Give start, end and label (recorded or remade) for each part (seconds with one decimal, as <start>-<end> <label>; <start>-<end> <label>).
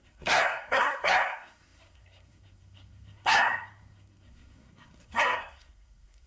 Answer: 0.0-6.3 remade